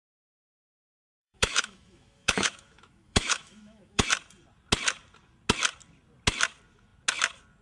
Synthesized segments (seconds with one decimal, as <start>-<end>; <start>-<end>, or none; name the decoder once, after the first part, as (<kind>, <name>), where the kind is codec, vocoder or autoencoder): 0.0-4.1 (autoencoder, DAC-VAE)